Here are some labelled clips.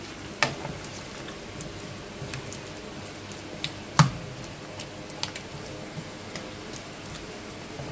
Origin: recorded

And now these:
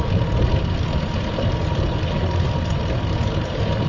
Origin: recorded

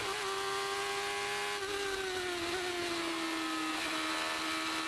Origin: recorded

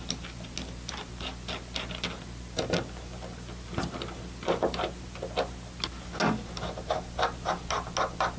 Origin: recorded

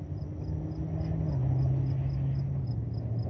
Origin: recorded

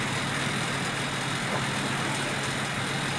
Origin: recorded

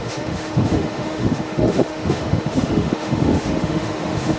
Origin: remade